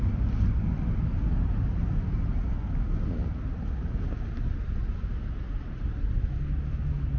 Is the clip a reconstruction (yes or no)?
no